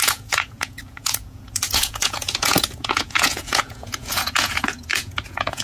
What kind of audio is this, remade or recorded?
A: remade